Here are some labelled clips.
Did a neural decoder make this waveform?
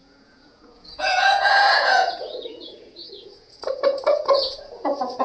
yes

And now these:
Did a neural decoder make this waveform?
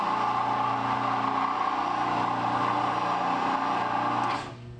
no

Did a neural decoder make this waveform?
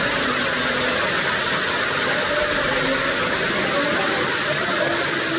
no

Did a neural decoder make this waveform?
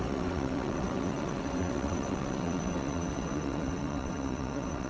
yes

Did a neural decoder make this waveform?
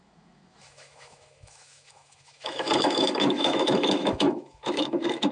yes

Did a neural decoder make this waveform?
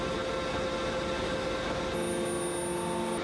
no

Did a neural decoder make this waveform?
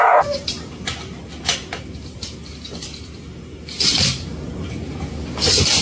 no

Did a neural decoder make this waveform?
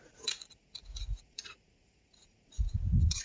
yes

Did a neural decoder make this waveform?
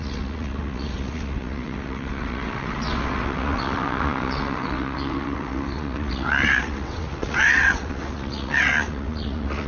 yes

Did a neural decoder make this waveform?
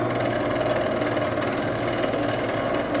no